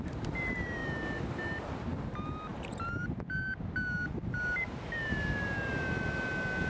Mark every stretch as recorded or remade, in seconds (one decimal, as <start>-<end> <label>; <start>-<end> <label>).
0.0-6.7 recorded